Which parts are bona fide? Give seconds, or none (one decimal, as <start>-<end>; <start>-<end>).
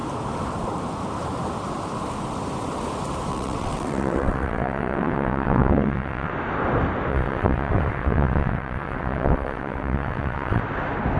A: 0.0-3.3; 6.3-7.1; 10.6-11.2